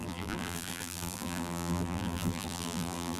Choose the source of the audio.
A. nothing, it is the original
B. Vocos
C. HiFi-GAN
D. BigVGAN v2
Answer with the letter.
D